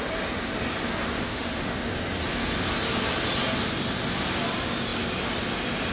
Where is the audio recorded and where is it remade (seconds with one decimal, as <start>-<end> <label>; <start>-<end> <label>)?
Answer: 0.0-1.0 recorded; 1.0-1.8 remade; 1.8-5.9 recorded